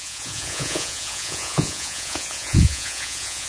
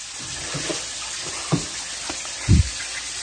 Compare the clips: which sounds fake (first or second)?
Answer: first